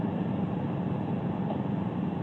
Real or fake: real